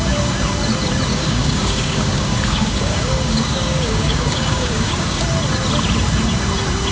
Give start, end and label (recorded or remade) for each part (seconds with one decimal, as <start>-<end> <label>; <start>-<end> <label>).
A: 0.0-1.1 recorded; 1.1-5.2 remade; 5.2-6.9 recorded

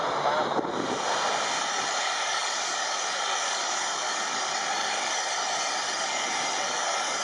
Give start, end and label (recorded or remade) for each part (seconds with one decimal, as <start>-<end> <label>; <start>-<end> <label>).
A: 0.0-1.6 recorded; 1.6-7.2 remade

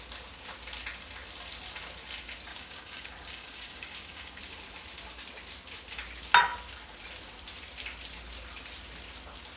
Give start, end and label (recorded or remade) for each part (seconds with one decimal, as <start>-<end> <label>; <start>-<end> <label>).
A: 0.0-2.5 recorded; 2.5-4.4 remade; 4.4-9.6 recorded

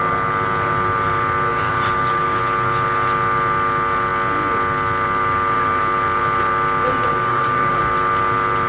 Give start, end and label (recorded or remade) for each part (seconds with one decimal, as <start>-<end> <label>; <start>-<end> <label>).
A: 0.0-1.5 recorded; 1.5-2.4 remade; 2.4-7.1 recorded; 7.1-7.8 remade; 7.8-8.7 recorded

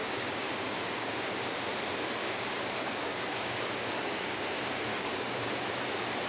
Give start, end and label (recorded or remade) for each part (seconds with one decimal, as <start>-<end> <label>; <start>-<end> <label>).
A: 0.0-1.4 remade; 1.4-2.2 recorded; 2.2-4.5 remade; 4.5-4.9 recorded; 4.9-5.5 remade; 5.5-6.3 recorded

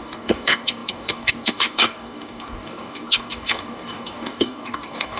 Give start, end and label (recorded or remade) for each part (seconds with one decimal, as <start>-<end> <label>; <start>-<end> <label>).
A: 0.0-5.2 remade